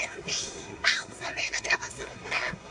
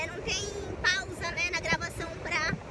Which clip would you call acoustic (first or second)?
second